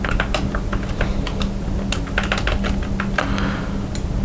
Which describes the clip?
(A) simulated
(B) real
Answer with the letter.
B